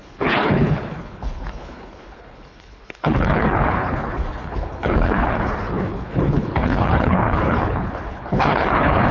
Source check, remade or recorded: remade